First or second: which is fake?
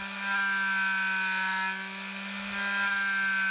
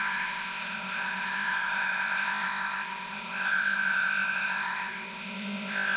second